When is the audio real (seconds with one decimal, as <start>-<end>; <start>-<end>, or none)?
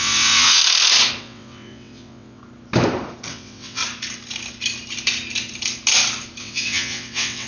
0.6-1.2; 2.4-3.3; 3.8-6.4